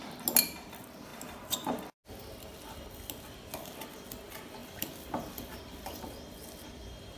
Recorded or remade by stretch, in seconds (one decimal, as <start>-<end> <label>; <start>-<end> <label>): 0.0-4.6 recorded; 4.6-6.0 remade; 6.0-7.2 recorded